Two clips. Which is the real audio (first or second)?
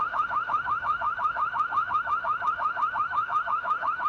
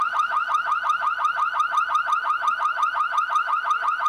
second